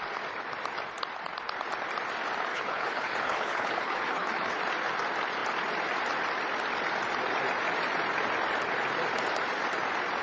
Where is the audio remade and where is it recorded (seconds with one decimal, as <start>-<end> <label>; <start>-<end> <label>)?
0.0-2.5 recorded; 2.5-4.6 remade; 4.6-10.2 recorded